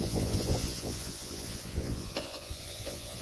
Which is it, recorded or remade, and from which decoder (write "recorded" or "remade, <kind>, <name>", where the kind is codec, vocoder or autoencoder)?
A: remade, vocoder, Vocos